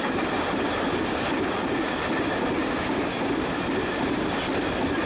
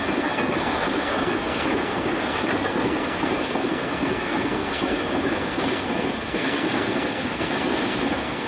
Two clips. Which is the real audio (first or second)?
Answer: first